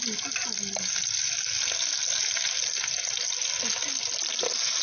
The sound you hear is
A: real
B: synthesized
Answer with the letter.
A